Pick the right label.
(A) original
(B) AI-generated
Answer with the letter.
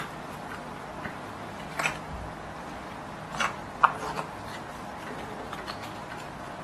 A